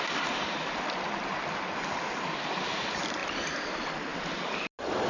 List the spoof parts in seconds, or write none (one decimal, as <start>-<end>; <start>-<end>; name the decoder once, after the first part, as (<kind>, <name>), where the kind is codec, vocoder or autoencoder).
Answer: none